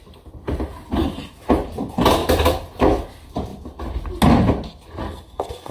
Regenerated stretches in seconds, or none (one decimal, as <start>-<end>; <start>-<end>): 5.0-5.7